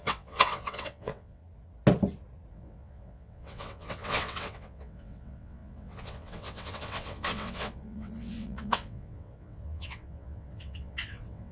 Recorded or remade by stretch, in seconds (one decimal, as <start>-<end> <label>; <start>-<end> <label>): 0.0-1.4 remade; 1.4-2.5 recorded; 2.5-11.5 remade